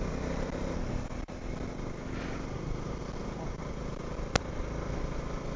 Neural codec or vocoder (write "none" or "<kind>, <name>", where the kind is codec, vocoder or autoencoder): none